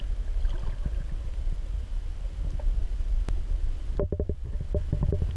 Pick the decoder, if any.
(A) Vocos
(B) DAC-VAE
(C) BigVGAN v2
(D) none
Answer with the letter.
D